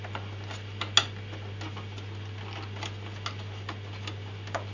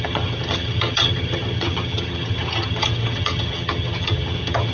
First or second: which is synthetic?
second